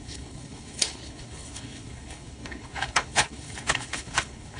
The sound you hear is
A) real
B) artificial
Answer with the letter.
B